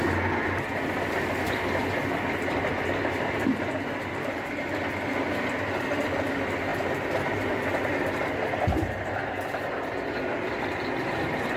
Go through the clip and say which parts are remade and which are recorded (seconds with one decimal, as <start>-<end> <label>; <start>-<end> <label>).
0.0-11.6 recorded